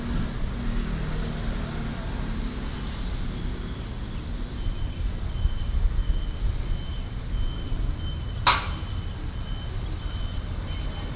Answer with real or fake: real